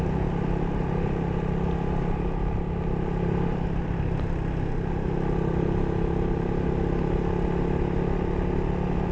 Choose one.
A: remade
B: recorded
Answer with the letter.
B